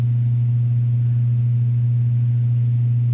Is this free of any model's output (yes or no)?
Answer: yes